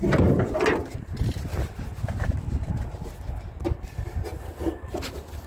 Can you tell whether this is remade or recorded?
recorded